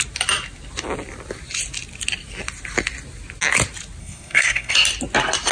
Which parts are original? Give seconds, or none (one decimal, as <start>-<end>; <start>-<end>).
0.0-4.0; 4.7-5.5

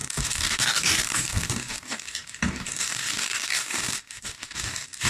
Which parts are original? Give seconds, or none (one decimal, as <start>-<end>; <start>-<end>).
none

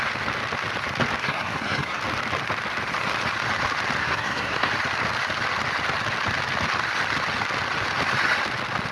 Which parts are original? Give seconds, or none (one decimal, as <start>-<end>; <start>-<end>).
0.0-1.2; 2.0-4.0; 4.7-8.9